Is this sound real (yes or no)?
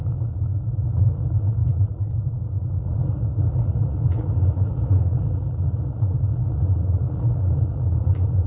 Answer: no